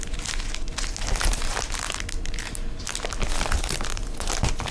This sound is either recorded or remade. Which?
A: recorded